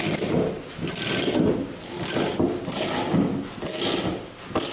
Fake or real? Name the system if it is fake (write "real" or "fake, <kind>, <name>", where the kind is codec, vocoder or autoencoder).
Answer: real